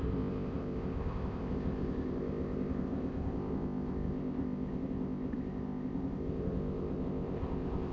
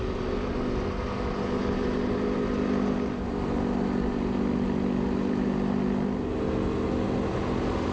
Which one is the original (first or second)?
second